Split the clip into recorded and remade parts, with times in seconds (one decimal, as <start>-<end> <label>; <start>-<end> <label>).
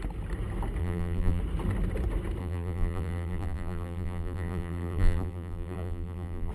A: 0.0-0.8 recorded; 0.8-1.4 remade; 1.4-2.4 recorded; 2.4-6.5 remade